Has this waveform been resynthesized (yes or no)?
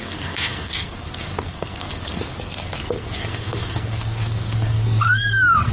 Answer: yes